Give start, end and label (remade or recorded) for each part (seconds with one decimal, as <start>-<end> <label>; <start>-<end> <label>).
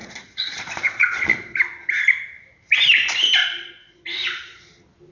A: 0.0-1.6 remade; 1.6-3.4 recorded; 3.4-4.6 remade; 4.6-5.1 recorded